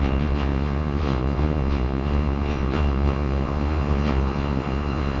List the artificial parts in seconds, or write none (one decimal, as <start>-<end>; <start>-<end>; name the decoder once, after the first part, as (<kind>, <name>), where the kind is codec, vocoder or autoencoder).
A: 0.0-5.2 (vocoder, Vocos)